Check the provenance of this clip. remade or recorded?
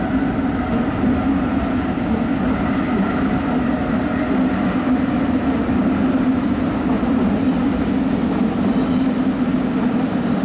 recorded